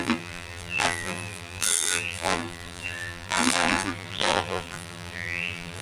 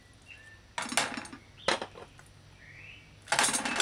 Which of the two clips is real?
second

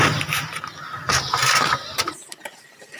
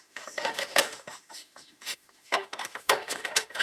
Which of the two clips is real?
first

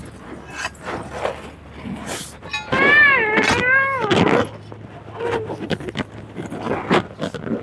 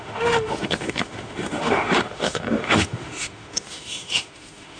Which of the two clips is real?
first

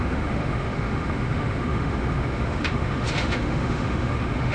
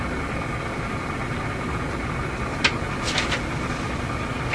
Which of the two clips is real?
second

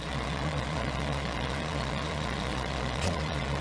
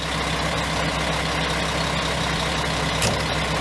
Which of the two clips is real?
second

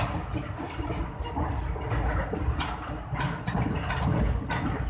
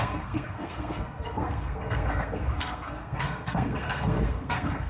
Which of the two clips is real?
first